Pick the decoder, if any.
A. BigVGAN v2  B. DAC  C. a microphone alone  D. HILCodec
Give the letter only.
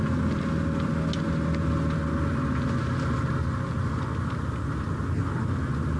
C